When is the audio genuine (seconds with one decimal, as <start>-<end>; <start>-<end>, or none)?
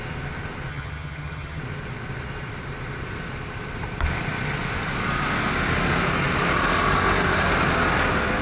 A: 0.0-0.7; 1.6-8.4